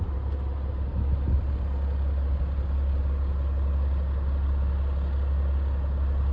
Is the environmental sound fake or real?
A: real